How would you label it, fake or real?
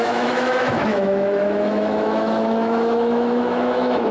fake